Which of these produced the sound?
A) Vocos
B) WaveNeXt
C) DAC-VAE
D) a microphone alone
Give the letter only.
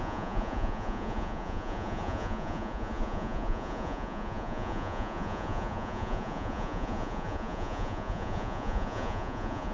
A